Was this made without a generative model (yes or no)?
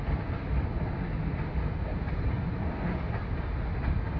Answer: yes